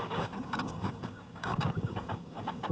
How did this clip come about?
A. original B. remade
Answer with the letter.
B